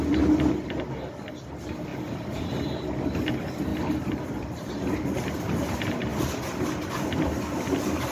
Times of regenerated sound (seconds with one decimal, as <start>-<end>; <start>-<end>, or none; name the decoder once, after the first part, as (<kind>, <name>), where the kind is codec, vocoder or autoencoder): 1.9-2.4 (vocoder, BigVGAN v2); 3.7-4.7